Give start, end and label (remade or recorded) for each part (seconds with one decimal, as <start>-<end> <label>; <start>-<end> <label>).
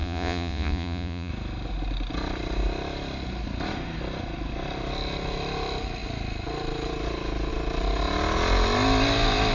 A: 0.0-1.3 remade; 1.3-9.5 recorded